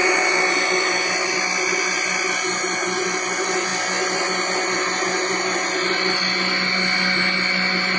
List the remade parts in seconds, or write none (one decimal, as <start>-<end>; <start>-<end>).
none